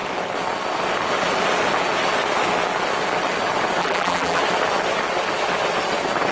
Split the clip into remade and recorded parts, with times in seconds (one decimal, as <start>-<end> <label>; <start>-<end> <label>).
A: 0.0-3.8 recorded; 3.8-4.4 remade; 4.4-6.3 recorded